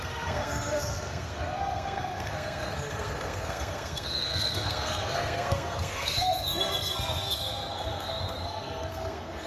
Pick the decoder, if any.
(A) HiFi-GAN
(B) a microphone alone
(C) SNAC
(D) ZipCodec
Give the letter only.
C